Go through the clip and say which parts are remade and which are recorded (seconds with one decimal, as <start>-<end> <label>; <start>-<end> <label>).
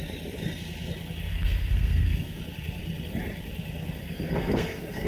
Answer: 0.0-1.3 recorded; 1.3-2.4 remade; 2.4-4.0 recorded; 4.0-5.1 remade